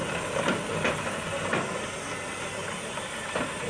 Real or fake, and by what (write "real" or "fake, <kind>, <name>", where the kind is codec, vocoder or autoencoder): real